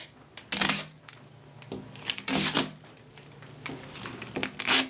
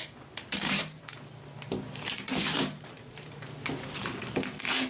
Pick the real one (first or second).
first